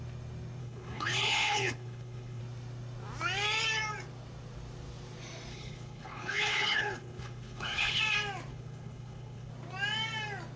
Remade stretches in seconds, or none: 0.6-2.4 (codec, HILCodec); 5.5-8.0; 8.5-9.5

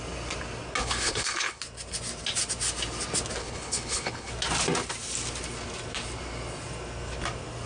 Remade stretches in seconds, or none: 0.8-1.6 (codec, HILCodec); 3.4-4.3

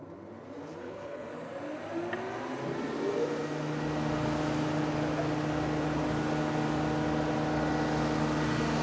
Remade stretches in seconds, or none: 0.8-1.3 (codec, HILCodec)